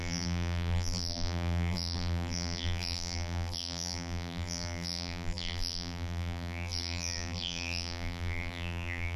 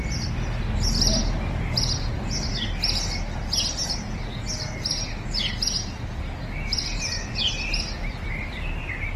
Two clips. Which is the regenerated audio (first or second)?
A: first